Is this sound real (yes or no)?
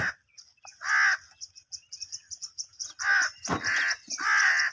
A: yes